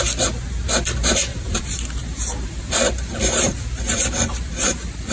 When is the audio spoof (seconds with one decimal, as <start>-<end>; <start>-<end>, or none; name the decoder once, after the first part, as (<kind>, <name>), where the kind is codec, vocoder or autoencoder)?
1.3-4.4 (vocoder, BigVGAN v2)